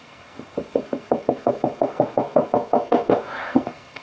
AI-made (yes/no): yes